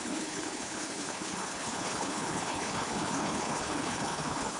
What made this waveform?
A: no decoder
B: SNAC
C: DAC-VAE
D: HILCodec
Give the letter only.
D